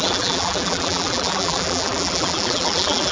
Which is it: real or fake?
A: fake